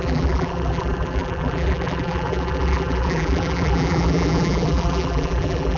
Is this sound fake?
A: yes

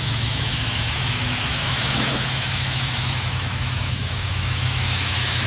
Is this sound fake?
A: yes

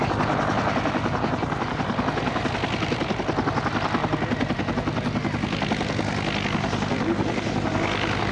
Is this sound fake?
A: no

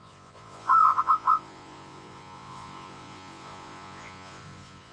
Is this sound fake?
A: yes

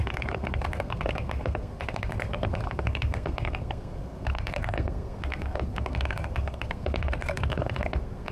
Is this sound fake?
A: yes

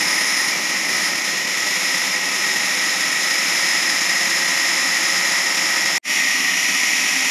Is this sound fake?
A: no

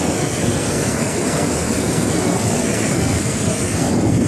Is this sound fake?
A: yes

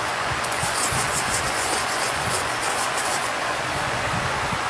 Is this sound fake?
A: yes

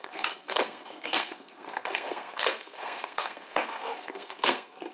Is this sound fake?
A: yes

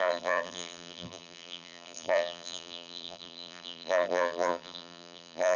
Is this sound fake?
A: yes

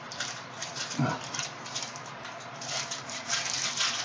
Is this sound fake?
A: yes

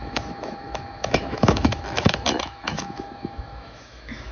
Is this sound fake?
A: yes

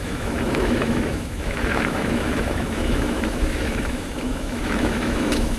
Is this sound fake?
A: yes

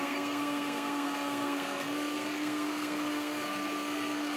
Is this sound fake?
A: yes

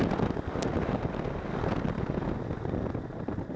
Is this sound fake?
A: no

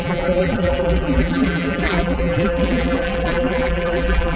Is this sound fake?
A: yes